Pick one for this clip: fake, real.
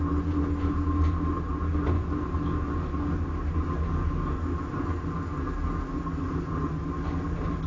real